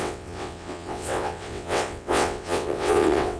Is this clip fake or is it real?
fake